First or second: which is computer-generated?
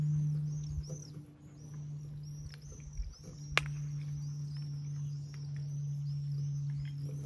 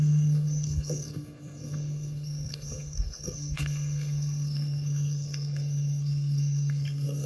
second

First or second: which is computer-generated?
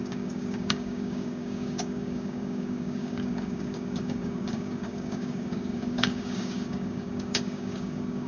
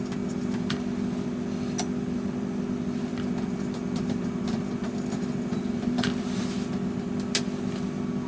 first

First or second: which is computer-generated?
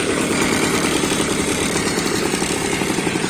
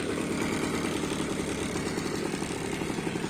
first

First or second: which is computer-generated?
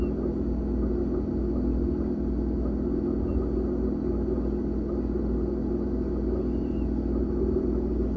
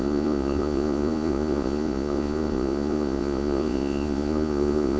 second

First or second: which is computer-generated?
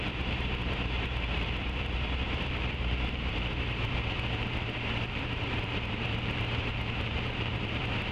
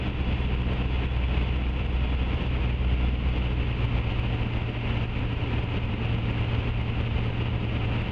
first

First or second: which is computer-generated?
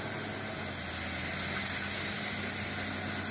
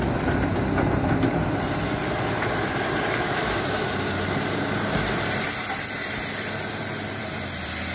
second